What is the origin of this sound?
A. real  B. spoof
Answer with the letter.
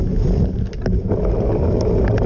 A